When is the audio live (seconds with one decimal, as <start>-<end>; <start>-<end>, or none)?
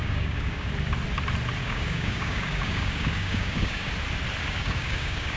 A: 0.7-1.6; 3.9-4.4